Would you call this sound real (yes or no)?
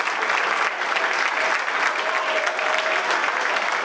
yes